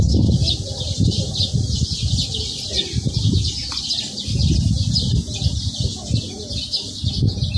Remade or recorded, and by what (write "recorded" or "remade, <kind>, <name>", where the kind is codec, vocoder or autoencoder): recorded